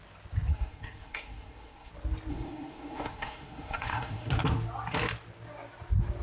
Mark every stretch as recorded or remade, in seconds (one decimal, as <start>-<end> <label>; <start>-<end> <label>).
0.0-0.5 recorded; 0.5-1.9 remade; 1.9-2.3 recorded; 2.3-4.3 remade; 4.3-6.2 recorded

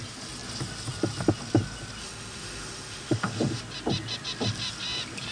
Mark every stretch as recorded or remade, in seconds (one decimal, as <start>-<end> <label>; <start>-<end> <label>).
0.0-2.0 recorded; 2.0-3.6 remade; 3.6-5.3 recorded